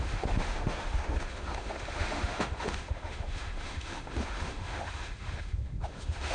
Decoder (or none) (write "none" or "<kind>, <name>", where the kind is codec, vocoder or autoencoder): autoencoder, DAC-VAE